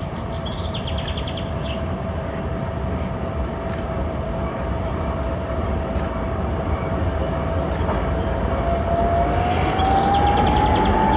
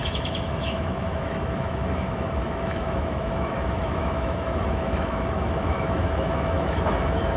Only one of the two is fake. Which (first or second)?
second